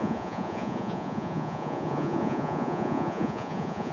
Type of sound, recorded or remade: remade